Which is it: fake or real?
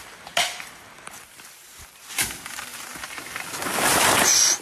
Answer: real